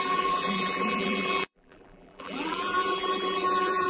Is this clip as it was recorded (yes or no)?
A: no